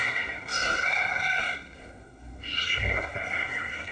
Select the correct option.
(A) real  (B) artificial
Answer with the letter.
B